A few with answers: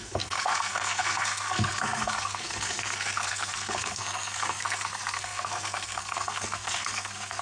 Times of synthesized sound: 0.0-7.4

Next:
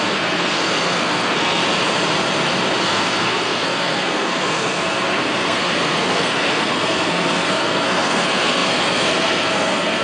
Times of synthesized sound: 0.0-1.6; 2.8-10.0

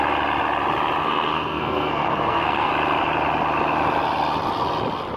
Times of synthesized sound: 1.0-2.7

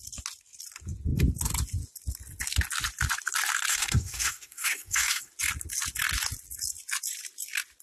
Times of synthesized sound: 3.7-5.3

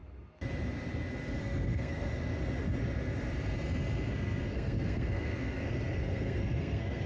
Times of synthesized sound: 1.4-2.1; 4.1-7.1

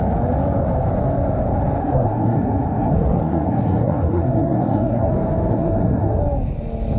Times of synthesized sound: 1.8-5.1; 5.5-6.2